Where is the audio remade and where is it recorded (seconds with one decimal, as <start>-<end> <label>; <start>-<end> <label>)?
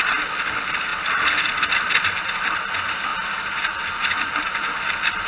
0.0-3.1 recorded; 3.1-5.3 remade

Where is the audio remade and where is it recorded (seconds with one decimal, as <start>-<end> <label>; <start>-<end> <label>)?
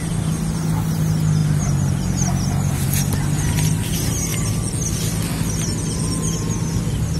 0.0-7.2 recorded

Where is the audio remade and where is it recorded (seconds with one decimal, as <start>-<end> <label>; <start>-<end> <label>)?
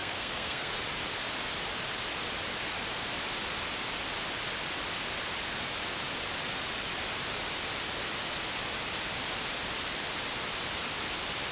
0.0-0.7 remade; 0.7-11.5 recorded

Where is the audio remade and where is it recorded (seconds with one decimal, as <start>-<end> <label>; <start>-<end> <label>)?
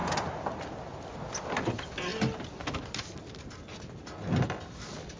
0.0-5.2 recorded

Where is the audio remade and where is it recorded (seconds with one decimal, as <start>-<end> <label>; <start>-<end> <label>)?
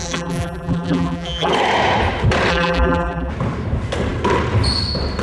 0.0-1.5 remade; 1.5-2.5 recorded; 2.5-3.3 remade; 3.3-5.2 recorded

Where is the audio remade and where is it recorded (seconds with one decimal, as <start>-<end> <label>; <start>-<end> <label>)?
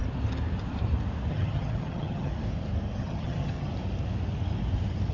0.0-1.3 recorded; 1.3-2.3 remade; 2.3-3.0 recorded; 3.0-3.7 remade; 3.7-5.1 recorded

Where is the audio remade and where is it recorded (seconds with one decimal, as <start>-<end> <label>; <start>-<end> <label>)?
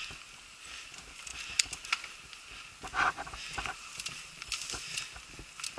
0.0-5.8 recorded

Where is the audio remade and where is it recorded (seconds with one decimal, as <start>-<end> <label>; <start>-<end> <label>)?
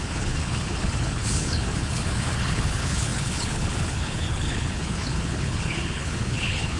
0.0-6.8 remade